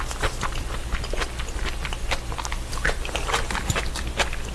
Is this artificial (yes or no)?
no